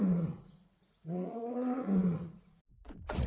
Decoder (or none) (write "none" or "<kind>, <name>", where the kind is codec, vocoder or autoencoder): vocoder, Vocos